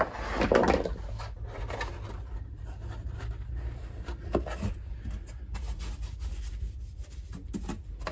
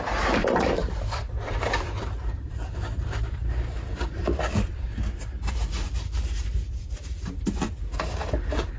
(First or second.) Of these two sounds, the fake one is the second